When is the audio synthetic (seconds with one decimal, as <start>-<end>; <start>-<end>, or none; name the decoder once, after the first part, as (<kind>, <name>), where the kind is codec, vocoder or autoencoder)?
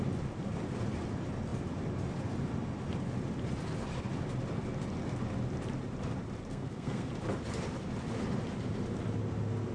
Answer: 6.5-7.1 (codec, SNAC)